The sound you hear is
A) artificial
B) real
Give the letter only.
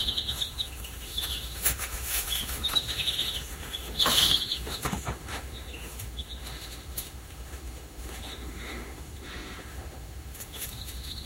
A